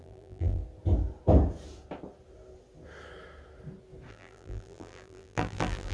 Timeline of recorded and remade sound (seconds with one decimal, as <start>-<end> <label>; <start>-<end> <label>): 0.0-0.6 remade; 0.6-4.1 recorded; 4.1-5.9 remade